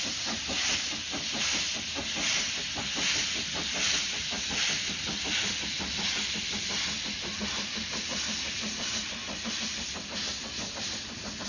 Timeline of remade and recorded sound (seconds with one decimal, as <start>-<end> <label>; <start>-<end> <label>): 0.0-11.5 recorded